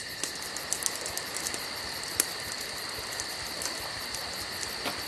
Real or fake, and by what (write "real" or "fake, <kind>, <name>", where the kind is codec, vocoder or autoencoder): real